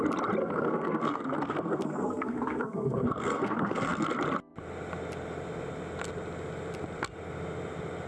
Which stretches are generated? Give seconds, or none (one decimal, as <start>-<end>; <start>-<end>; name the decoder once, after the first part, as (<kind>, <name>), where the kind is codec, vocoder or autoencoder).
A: 0.4-4.1 (codec, SNAC)